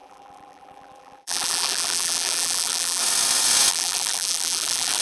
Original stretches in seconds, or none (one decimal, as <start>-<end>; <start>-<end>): 3.0-3.7